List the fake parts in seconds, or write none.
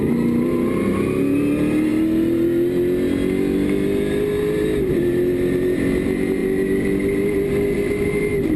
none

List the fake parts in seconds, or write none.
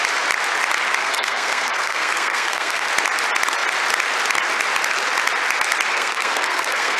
1.0-2.9 (codec, SNAC); 5.9-7.0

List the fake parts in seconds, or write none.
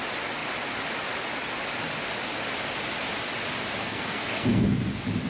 3.8-4.8 (codec, SNAC)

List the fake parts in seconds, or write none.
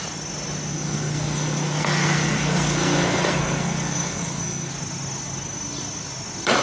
0.7-4.7 (codec, SNAC)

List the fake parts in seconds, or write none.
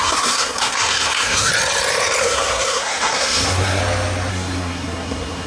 0.0-1.5 (codec, SNAC); 2.2-3.8; 4.3-5.5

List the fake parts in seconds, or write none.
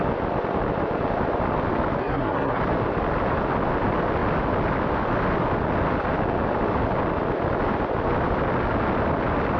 2.0-2.6 (codec, SNAC)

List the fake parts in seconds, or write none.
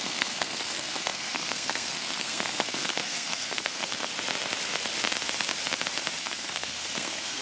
0.0-4.1 (codec, SNAC); 6.2-7.4